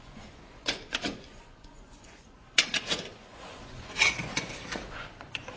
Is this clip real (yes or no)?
no